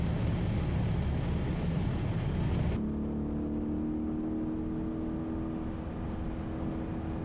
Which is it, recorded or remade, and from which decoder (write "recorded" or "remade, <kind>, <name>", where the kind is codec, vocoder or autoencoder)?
recorded